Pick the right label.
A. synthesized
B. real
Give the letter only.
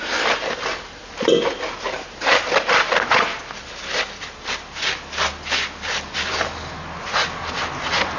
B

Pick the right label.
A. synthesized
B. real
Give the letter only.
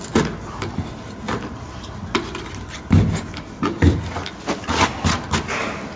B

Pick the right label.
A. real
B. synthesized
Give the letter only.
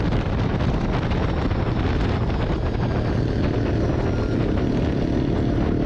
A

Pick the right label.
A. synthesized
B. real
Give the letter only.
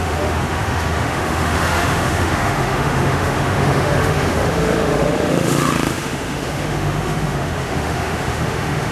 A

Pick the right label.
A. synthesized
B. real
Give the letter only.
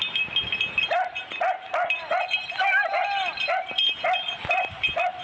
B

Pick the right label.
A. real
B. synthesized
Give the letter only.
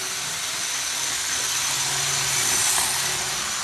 A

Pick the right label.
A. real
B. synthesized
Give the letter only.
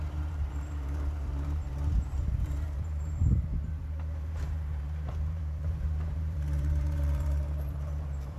B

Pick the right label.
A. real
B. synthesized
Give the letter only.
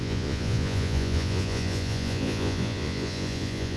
B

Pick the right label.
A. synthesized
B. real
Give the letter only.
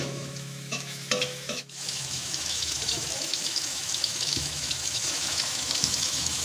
A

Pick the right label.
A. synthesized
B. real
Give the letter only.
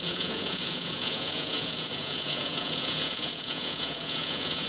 A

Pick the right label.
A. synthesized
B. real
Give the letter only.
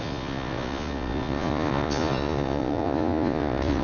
A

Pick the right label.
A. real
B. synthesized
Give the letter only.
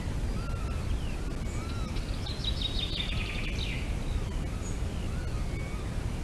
A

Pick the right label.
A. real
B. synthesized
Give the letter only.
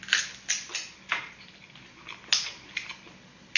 A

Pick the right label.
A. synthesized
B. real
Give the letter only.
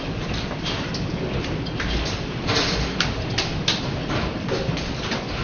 B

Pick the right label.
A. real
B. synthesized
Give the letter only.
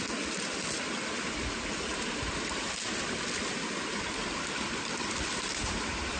A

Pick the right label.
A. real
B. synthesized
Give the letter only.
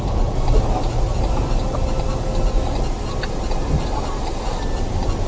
A